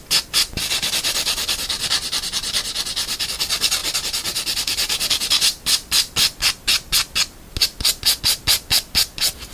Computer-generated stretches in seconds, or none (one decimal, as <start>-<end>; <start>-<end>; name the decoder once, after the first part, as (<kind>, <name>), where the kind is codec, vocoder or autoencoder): none